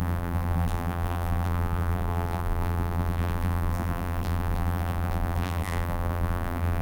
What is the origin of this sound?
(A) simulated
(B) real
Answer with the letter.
A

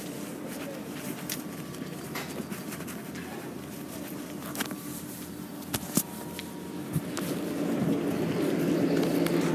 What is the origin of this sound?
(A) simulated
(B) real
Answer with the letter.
B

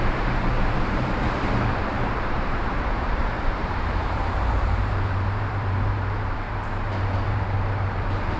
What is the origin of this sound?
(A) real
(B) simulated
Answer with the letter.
B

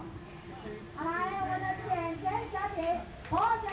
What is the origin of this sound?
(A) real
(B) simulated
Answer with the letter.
B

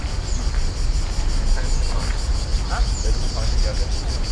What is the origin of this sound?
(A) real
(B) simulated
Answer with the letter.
A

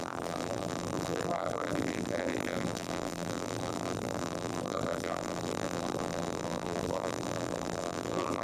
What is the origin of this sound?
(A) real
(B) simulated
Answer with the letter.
B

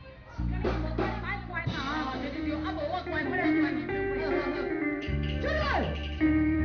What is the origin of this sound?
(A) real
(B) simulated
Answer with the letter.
B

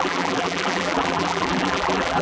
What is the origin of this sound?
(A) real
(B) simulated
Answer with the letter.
B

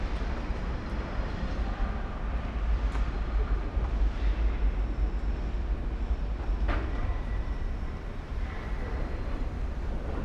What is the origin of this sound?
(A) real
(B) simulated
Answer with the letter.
B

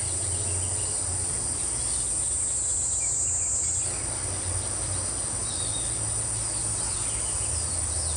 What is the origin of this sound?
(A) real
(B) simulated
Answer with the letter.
A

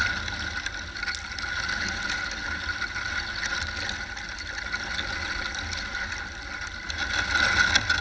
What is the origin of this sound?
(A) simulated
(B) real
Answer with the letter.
B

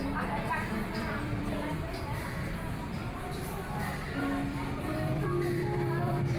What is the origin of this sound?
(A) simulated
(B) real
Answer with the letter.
A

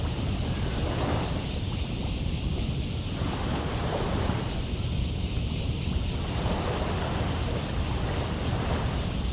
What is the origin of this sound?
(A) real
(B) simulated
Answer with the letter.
A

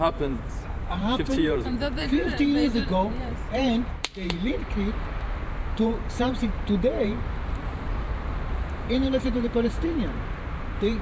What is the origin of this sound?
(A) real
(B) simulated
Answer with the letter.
B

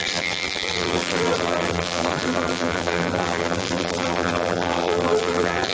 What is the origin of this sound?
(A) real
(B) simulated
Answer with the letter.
B